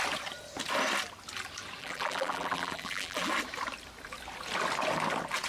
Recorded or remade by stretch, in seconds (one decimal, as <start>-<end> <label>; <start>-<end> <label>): 0.0-1.8 recorded; 1.8-3.3 remade; 3.3-5.5 recorded